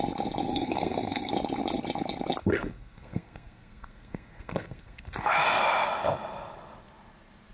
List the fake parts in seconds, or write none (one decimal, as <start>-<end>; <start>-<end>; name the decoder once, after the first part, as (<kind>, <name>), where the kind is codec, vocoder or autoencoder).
0.5-1.3 (codec, SNAC); 2.4-5.3